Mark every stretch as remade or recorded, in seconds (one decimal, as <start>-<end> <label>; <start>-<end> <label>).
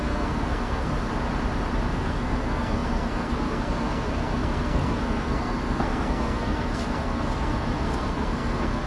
0.0-0.9 remade; 0.9-1.9 recorded; 1.9-8.9 remade